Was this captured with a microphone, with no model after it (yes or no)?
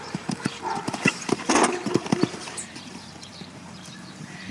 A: no